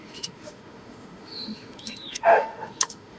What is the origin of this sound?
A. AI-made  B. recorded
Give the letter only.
A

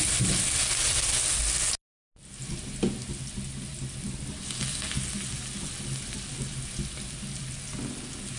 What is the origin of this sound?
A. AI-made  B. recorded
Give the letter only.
B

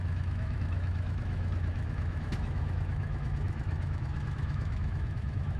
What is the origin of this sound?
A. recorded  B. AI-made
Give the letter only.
B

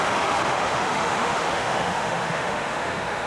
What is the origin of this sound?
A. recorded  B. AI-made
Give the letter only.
B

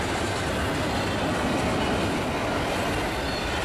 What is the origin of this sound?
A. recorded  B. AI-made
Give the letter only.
A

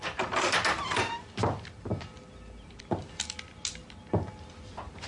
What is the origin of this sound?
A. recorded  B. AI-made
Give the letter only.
A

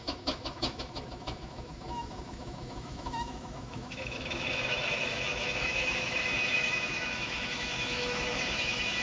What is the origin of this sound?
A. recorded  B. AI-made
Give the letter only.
B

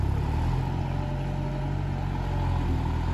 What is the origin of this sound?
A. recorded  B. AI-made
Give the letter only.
A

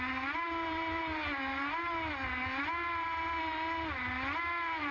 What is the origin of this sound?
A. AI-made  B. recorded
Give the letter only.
B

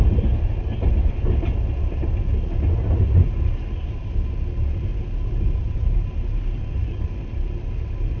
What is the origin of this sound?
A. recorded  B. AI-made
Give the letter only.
A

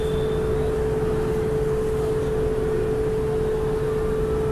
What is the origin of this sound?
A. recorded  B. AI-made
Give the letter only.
A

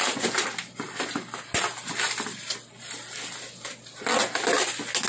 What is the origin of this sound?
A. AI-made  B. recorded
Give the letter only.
B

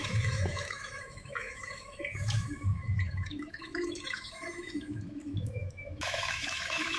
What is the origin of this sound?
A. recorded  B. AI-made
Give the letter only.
B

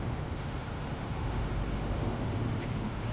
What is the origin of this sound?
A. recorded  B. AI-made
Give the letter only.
B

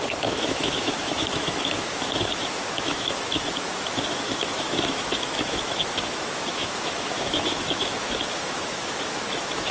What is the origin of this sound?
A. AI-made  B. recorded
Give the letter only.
A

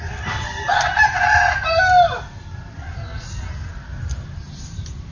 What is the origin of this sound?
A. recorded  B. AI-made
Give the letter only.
A